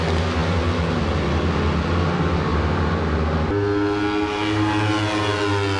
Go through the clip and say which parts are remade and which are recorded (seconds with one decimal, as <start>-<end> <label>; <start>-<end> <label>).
0.0-5.8 recorded